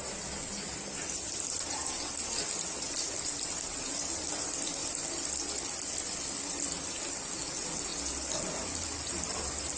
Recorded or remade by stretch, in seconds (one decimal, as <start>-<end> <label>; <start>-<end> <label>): 0.0-9.8 recorded